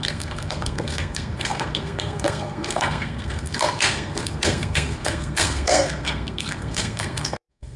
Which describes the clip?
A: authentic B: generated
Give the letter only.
B